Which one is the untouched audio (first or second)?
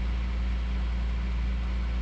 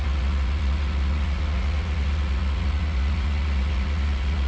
first